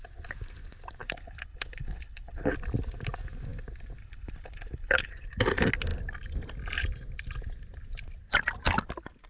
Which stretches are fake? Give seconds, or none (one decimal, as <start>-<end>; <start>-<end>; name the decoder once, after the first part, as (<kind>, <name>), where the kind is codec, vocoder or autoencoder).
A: 1.0-2.5 (codec, HILCodec); 4.0-5.1